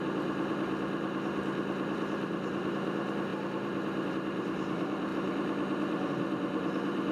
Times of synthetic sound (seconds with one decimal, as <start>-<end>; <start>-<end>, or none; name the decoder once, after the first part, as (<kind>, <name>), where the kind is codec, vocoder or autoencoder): 0.0-7.1 (vocoder, BigVGAN v2)